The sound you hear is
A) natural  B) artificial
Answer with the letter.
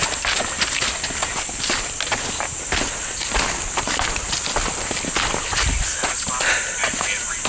A